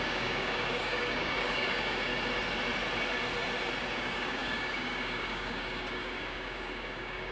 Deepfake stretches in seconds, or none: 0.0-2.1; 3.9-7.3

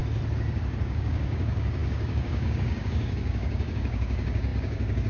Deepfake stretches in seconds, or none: 0.8-5.1